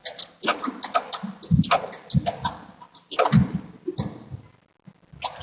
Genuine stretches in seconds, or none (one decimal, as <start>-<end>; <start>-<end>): 0.0-5.4